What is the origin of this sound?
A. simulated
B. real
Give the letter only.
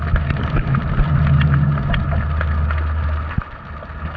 B